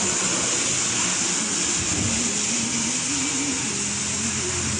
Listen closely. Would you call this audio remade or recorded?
recorded